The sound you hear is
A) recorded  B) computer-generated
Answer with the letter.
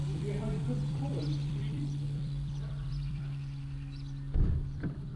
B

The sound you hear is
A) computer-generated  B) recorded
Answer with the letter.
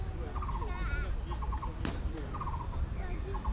B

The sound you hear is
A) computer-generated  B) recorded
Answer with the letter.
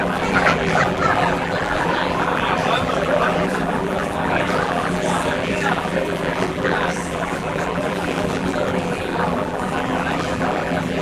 A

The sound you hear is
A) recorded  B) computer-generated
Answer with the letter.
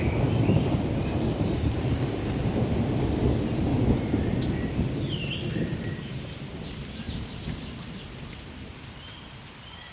B